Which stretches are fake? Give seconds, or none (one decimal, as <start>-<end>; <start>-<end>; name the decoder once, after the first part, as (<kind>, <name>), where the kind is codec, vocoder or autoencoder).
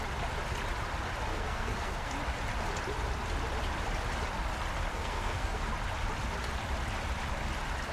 1.3-2.1 (codec, SNAC); 4.9-5.7